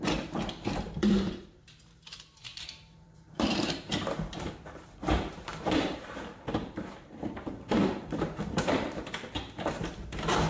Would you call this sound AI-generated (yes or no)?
yes